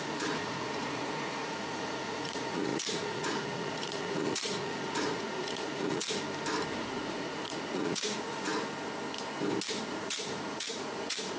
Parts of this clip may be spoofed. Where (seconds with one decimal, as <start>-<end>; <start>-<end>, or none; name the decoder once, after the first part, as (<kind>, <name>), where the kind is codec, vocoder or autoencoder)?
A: 0.0-6.0 (vocoder, Vocos); 6.8-8.5; 9.9-11.4